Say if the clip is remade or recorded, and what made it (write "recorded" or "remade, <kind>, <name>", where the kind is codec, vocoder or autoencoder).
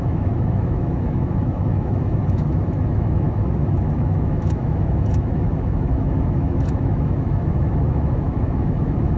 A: remade, autoencoder, DAC-VAE